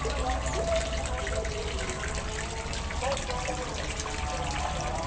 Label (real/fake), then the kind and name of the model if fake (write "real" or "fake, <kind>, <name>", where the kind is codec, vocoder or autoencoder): real